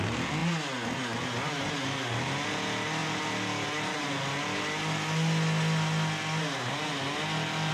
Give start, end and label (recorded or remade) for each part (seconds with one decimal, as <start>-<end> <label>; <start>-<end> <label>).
0.0-7.7 recorded